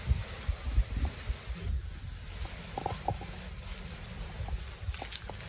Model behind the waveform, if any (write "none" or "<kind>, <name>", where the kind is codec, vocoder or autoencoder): none